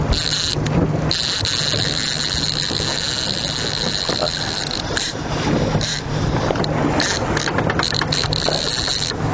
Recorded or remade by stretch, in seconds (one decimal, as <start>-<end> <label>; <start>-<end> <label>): 0.0-9.3 recorded